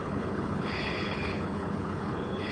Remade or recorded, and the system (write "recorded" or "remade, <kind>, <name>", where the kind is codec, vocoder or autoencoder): remade, codec, HILCodec